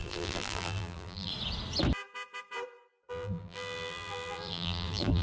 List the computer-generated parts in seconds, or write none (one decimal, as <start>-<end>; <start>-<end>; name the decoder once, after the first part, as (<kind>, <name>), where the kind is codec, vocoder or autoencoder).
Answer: 0.0-1.3 (vocoder, BigVGAN v2); 3.1-5.2